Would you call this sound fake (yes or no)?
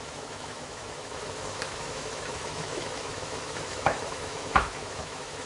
yes